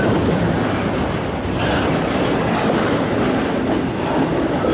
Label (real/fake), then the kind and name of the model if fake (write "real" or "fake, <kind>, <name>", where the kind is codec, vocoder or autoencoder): real